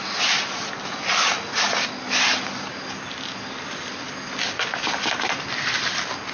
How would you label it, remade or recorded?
recorded